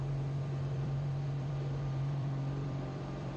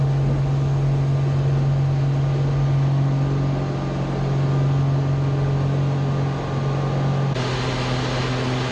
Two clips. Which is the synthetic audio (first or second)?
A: first